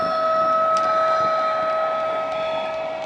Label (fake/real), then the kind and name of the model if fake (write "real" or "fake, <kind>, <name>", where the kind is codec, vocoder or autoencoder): real